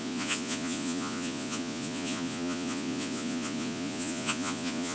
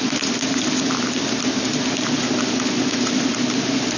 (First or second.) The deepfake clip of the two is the first